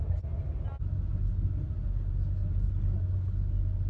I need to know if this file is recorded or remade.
recorded